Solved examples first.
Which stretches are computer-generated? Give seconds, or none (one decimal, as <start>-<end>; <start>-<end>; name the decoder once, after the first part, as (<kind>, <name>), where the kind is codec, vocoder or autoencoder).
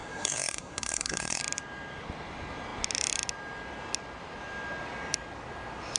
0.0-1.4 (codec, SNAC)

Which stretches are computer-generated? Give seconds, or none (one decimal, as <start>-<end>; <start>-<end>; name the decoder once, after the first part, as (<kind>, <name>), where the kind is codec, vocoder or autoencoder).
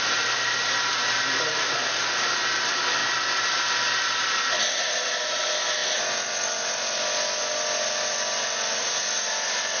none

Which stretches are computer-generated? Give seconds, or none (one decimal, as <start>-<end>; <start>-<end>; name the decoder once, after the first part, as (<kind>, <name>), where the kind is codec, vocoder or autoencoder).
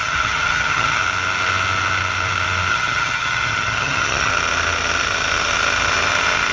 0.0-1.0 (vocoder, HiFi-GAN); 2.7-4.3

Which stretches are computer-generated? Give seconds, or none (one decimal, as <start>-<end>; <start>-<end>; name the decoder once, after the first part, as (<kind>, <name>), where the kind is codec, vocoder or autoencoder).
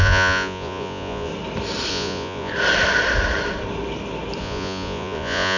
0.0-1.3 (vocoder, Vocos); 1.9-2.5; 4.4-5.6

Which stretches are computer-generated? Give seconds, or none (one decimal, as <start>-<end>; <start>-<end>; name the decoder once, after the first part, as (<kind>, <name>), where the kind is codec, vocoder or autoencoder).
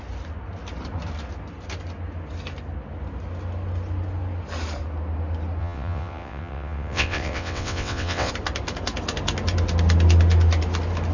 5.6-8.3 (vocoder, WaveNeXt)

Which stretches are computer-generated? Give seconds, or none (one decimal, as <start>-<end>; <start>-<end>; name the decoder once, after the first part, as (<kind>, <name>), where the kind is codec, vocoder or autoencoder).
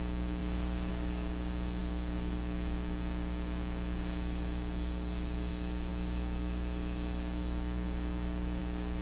0.0-9.0 (codec, DAC)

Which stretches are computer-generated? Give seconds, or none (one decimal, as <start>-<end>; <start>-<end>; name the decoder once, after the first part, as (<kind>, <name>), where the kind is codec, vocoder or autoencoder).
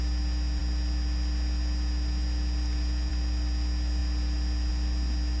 none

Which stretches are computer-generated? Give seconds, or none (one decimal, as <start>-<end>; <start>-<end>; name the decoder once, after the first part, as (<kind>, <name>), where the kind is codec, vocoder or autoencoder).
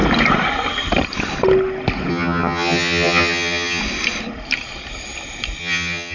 2.1-3.8 (vocoder, HiFi-GAN); 5.6-6.1